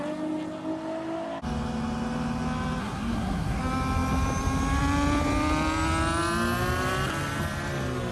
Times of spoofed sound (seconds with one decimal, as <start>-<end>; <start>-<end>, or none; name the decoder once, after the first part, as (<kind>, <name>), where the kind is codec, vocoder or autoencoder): 2.8-3.6 (codec, SNAC)